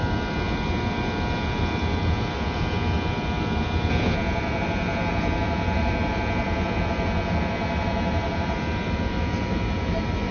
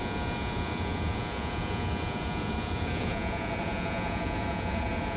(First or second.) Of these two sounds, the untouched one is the first